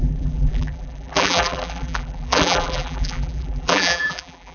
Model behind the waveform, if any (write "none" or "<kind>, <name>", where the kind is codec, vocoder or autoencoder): vocoder, BigVGAN v2